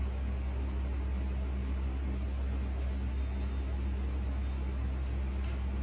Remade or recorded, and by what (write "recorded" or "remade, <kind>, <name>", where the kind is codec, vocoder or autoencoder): recorded